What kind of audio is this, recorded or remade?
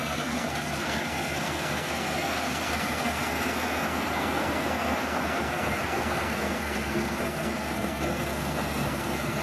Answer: remade